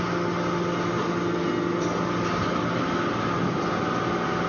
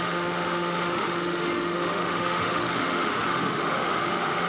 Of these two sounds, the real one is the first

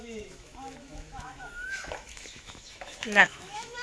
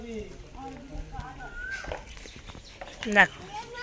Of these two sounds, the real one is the second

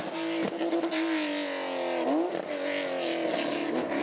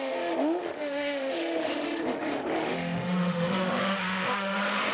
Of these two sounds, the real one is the first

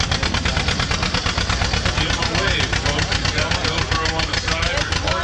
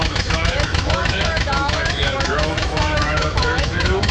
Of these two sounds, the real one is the first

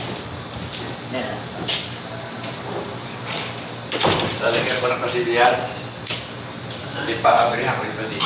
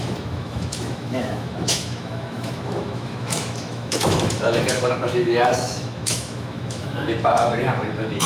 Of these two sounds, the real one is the first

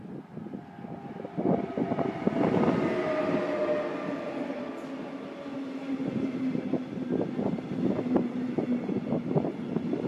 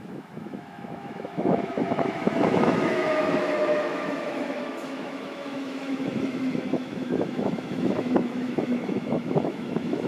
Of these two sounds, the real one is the first